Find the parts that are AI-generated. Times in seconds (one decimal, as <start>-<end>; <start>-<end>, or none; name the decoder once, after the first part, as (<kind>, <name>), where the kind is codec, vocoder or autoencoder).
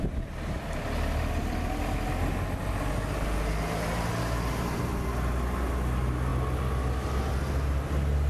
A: none